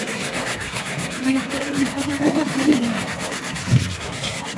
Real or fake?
fake